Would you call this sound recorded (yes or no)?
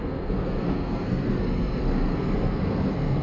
no